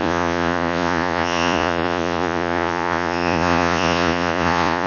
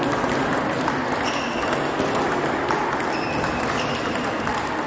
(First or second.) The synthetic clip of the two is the first